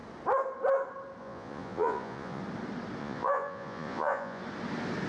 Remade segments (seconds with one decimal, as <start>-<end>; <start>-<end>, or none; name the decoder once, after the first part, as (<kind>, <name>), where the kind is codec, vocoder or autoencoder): 1.2-2.4 (vocoder, Vocos); 3.0-4.4